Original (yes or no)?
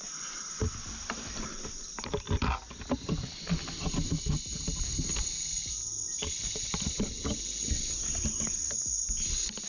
yes